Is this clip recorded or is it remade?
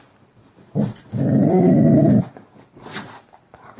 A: remade